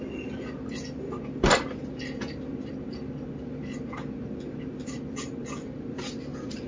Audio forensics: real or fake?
fake